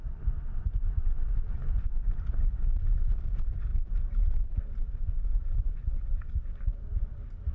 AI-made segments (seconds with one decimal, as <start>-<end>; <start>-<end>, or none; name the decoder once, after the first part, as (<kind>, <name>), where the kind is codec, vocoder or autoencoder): 0.0-7.5 (vocoder, BigVGAN v2)